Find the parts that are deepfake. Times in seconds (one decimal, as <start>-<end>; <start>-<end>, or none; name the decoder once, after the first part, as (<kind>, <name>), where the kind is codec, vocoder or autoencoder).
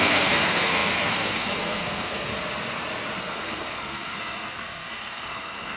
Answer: 0.0-2.3 (codec, SNAC); 3.2-5.8